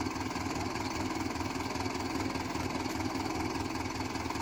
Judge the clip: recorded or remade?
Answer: recorded